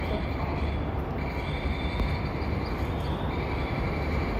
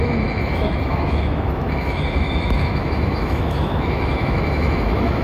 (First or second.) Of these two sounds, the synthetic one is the second